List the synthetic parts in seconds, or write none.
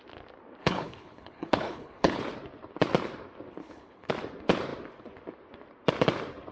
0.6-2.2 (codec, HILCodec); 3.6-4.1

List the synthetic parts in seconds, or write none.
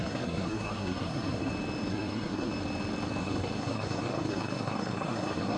0.0-1.5 (codec, SNAC); 1.9-2.5; 3.2-5.6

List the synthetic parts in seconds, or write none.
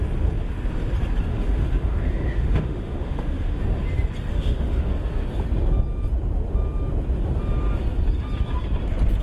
1.3-3.6 (autoencoder, DAC-VAE); 4.3-4.9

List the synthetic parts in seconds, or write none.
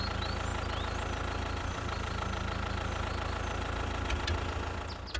none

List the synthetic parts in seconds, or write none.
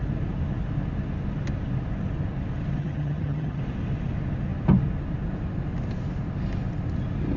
2.8-3.6 (vocoder, HiFi-GAN)